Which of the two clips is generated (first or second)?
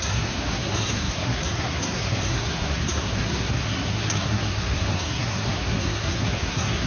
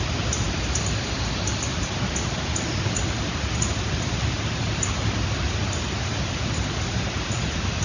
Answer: first